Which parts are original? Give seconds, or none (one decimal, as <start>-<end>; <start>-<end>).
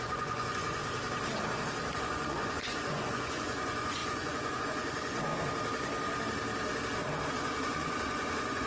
0.8-1.9; 5.3-7.3